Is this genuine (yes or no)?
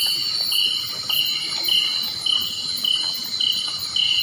yes